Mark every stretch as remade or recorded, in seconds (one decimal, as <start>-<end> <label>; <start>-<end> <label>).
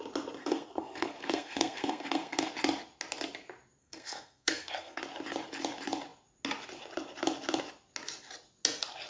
0.0-0.4 recorded; 0.4-2.5 remade; 2.5-3.8 recorded; 3.8-5.0 remade; 5.0-9.1 recorded